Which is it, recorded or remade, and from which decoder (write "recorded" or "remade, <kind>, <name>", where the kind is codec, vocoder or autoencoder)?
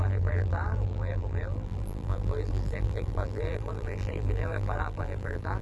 remade, vocoder, BigVGAN v2